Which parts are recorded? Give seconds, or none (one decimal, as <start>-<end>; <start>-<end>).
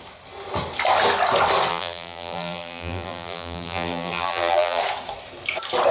0.0-1.7; 4.8-5.9